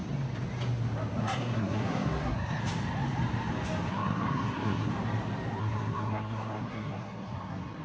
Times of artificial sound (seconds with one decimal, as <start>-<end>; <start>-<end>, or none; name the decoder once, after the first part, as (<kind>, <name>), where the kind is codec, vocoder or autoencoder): 1.2-2.6 (codec, SNAC); 3.9-4.9; 5.6-7.8